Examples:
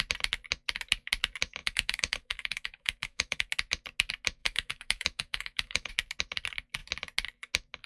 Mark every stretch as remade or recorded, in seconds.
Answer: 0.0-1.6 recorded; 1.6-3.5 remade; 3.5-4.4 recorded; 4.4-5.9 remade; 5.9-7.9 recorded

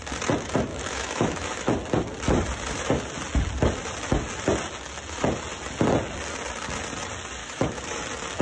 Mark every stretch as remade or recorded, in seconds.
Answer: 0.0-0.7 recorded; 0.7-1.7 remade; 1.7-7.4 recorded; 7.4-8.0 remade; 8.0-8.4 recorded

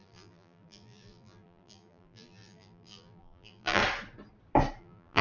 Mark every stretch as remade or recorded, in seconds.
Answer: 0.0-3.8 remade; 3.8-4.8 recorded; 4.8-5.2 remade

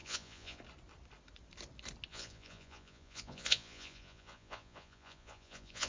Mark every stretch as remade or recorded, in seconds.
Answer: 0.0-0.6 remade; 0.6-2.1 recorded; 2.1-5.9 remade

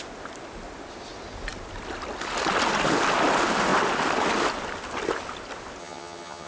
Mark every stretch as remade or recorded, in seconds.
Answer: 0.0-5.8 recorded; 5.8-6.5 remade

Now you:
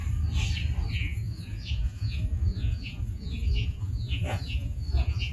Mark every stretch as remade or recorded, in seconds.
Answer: 0.0-0.9 recorded; 0.9-5.3 remade